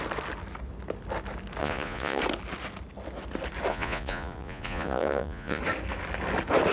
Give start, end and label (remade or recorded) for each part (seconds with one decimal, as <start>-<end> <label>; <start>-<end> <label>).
0.0-1.6 recorded; 1.6-2.2 remade; 2.2-3.7 recorded; 3.7-5.6 remade; 5.6-6.7 recorded